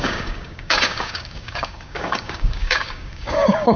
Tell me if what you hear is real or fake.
fake